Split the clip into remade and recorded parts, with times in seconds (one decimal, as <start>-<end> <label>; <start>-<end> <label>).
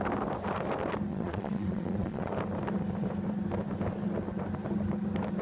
0.0-1.1 recorded; 1.1-2.3 remade; 2.3-5.4 recorded